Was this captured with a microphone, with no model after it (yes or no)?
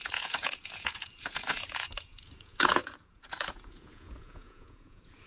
no